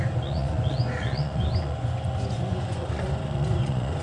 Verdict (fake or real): fake